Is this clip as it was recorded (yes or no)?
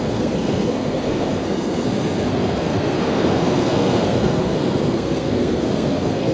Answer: no